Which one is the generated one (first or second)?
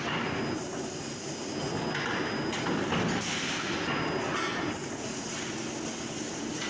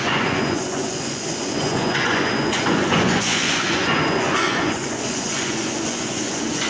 second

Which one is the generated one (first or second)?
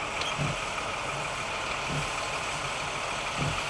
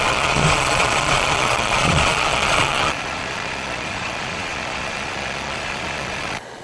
second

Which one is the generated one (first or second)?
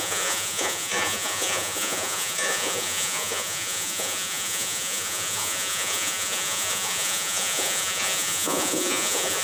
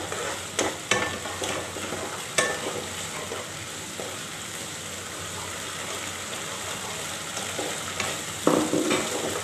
first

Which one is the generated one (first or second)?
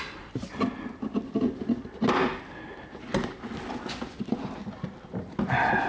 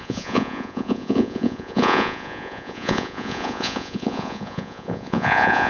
second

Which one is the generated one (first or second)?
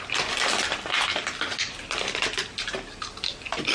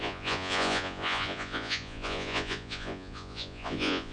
second